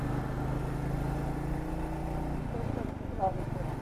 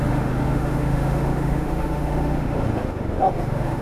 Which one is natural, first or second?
first